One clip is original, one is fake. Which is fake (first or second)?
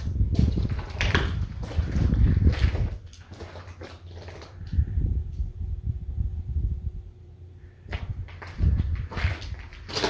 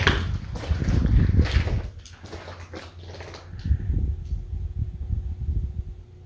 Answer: first